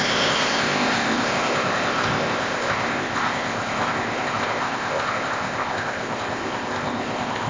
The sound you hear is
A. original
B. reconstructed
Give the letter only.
B